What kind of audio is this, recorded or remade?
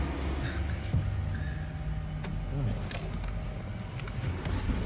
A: recorded